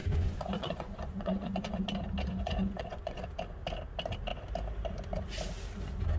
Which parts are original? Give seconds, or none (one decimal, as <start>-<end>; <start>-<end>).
1.8-2.3; 3.3-6.2